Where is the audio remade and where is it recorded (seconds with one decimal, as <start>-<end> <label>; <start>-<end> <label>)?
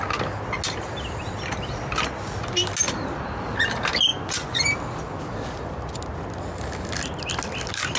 0.0-4.1 recorded; 4.1-4.6 remade; 4.6-8.0 recorded